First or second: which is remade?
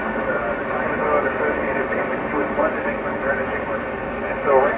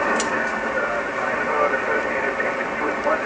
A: second